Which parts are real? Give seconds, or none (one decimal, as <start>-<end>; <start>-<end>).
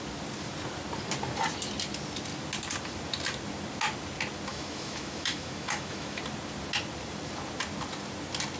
0.0-4.5; 6.2-8.6